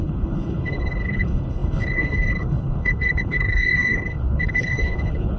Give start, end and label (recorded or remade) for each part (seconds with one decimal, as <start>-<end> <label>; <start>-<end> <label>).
0.0-5.4 remade